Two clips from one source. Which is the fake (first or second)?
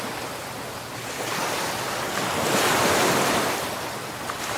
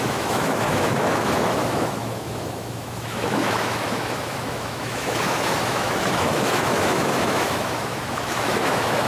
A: second